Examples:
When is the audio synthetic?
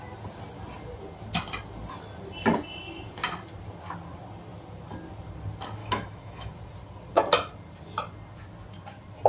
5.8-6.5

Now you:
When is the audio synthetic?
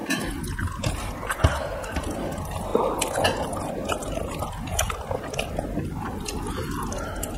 0.8-2.7; 3.7-7.4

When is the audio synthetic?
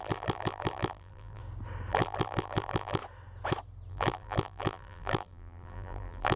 0.0-1.4; 1.9-3.0; 3.9-6.4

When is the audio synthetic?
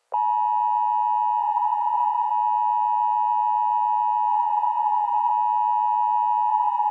1.4-2.3; 4.3-5.3; 6.5-6.9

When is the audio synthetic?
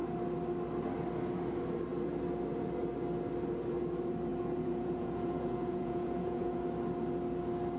4.3-6.6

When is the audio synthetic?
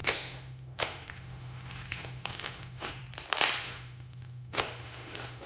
0.0-3.0; 3.6-5.5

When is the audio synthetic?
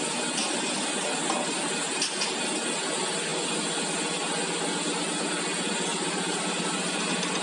5.9-6.6